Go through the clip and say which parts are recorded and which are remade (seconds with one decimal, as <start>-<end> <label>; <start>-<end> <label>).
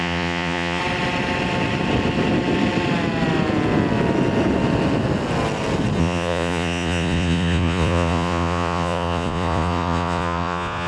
0.0-0.8 remade; 0.8-6.0 recorded; 6.0-10.9 remade